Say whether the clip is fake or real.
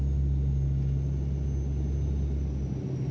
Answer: real